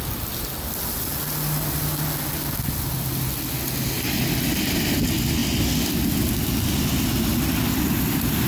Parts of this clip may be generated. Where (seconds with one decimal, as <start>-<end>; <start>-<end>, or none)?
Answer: none